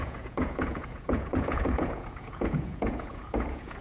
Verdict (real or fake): fake